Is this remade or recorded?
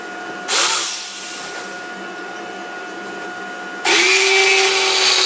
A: recorded